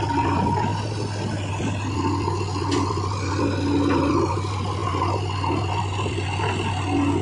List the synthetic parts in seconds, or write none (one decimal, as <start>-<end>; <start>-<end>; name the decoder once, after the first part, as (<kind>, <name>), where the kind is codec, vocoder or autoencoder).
none